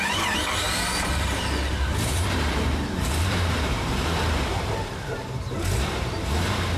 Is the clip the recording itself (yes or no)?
no